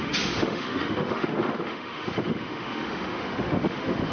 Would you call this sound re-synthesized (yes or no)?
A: yes